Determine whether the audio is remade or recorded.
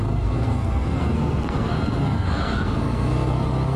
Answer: remade